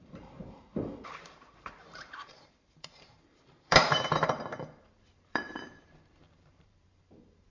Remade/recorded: remade